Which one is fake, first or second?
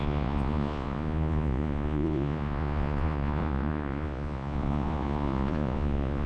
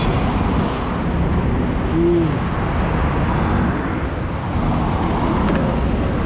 first